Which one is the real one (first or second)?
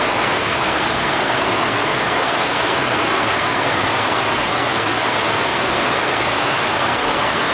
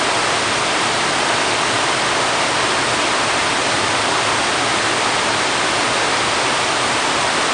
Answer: second